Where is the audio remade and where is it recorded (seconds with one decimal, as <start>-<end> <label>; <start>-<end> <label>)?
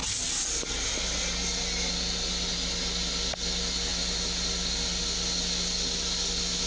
0.0-6.7 recorded